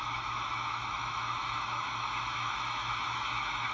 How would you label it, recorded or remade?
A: remade